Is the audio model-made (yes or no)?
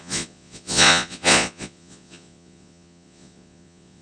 yes